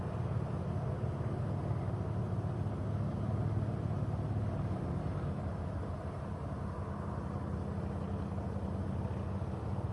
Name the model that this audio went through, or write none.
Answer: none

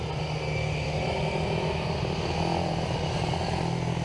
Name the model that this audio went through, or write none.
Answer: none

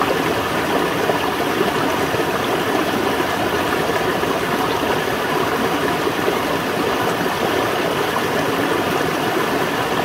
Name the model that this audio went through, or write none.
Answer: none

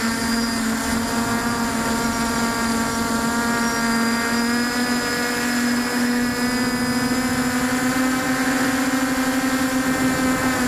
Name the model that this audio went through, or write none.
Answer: none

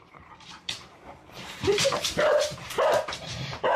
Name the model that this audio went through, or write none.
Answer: vocoder, BigVGAN v2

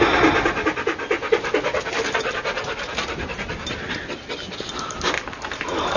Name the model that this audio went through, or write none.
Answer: none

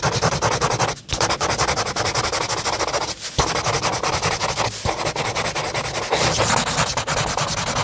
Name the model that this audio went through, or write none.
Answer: none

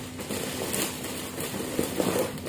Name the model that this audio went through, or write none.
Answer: none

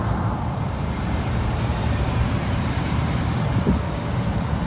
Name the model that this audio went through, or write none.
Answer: vocoder, BigVGAN v2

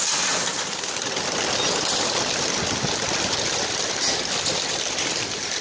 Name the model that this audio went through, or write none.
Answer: none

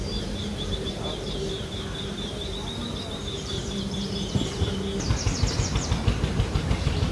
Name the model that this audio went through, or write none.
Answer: vocoder, BigVGAN v2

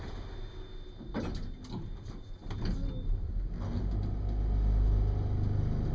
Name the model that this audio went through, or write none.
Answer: none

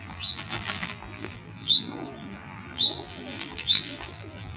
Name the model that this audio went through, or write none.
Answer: vocoder, BigVGAN v2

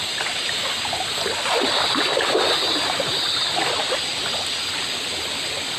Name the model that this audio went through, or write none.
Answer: none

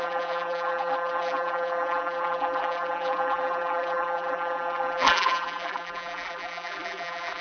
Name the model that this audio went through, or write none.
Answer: vocoder, BigVGAN v2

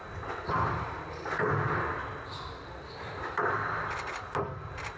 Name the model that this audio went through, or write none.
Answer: none